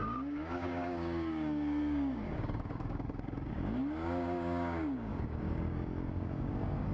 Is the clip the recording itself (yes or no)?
no